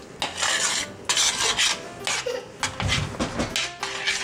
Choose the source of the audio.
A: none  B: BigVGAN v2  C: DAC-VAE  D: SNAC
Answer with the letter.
A